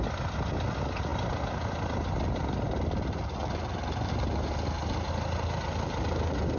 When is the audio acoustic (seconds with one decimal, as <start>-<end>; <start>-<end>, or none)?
0.0-6.6